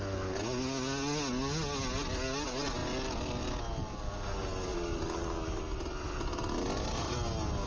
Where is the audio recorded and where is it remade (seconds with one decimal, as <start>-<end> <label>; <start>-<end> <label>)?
0.0-7.7 recorded